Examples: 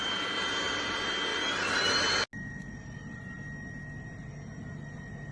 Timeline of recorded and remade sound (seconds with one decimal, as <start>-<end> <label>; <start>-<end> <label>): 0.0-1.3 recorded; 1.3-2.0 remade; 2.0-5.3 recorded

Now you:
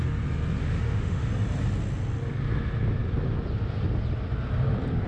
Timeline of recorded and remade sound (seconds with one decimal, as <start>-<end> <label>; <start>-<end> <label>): 0.0-0.6 recorded; 0.6-1.3 remade; 1.3-5.1 recorded

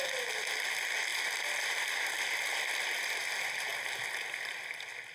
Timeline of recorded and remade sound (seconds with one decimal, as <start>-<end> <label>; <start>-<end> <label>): 0.0-1.1 recorded; 1.1-3.3 remade; 3.3-5.1 recorded

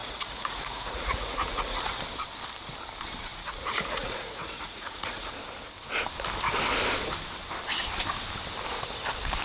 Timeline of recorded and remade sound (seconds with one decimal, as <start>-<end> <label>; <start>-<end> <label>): 0.0-2.0 remade; 2.0-3.3 recorded; 3.3-5.3 remade; 5.3-9.4 recorded

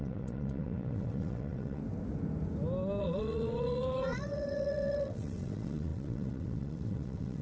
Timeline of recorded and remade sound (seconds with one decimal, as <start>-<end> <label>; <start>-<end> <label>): 0.0-1.8 remade; 1.8-3.0 recorded; 3.0-7.4 remade

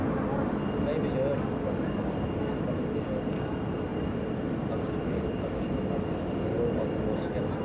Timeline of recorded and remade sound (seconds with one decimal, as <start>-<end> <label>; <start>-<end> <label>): 0.0-3.9 recorded; 3.9-7.6 remade

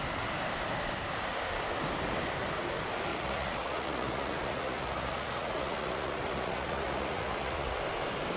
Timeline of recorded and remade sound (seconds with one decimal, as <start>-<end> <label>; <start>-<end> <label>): 0.0-3.1 recorded; 3.1-7.8 remade; 7.8-8.4 recorded

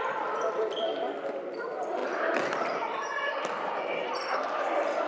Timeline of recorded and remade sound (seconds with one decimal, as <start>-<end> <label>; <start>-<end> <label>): 0.0-5.1 remade